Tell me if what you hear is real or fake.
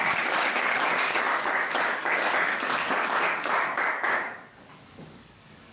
fake